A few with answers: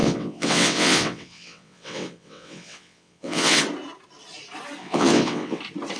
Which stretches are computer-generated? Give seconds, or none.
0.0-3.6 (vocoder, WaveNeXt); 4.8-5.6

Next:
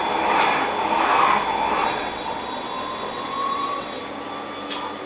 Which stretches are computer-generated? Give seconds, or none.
1.8-4.0 (vocoder, WaveNeXt)

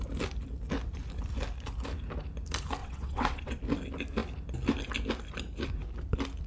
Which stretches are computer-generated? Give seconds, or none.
2.8-3.6 (vocoder, WaveNeXt)

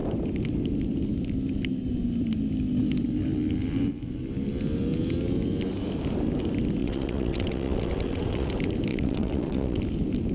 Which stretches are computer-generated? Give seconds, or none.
6.8-8.5 (vocoder, WaveNeXt); 8.9-9.8